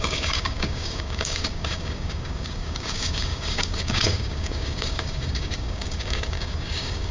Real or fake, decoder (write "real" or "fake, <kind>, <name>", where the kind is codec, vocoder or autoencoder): fake, codec, DAC